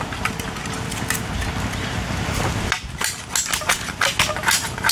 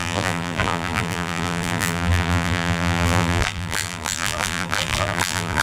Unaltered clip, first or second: first